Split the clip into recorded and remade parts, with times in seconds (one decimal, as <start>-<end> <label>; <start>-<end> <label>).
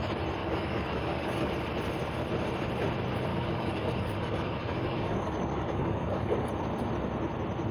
0.0-0.4 recorded; 0.4-1.5 remade; 1.5-3.3 recorded; 3.3-6.5 remade; 6.5-7.7 recorded